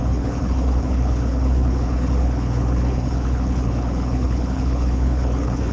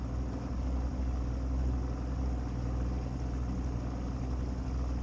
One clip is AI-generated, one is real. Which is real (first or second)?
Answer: second